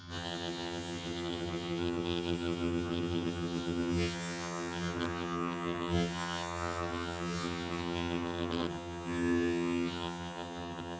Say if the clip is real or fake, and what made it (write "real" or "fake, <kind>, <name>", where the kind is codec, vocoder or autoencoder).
fake, vocoder, HiFi-GAN